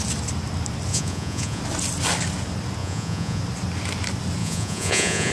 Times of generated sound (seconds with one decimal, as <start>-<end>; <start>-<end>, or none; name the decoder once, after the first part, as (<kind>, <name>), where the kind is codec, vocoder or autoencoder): 0.9-1.6 (vocoder, Vocos); 2.8-3.4; 4.4-5.3